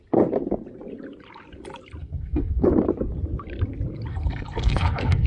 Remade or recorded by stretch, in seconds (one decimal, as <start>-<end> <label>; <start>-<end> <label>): 0.0-2.0 recorded; 2.0-2.7 remade; 2.7-4.1 recorded; 4.1-5.3 remade